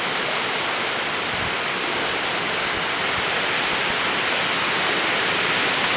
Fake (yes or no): no